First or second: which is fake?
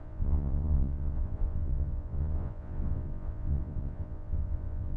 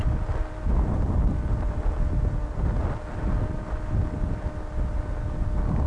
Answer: first